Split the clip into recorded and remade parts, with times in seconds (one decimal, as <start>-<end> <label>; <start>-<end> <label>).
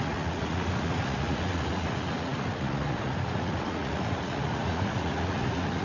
0.0-5.8 remade